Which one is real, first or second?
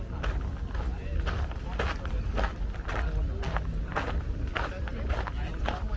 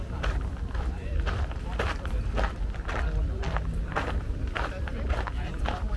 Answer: first